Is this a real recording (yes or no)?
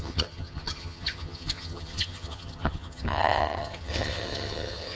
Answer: no